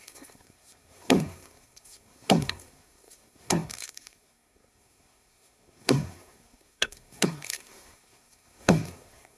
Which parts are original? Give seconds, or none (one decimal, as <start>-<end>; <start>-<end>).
none